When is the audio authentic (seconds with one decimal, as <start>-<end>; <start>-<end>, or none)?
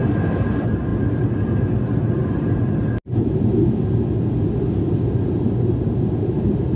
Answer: 0.0-6.8